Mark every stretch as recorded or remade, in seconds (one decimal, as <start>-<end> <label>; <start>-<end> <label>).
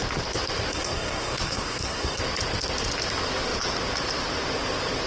0.0-0.7 recorded; 0.7-2.2 remade; 2.2-5.1 recorded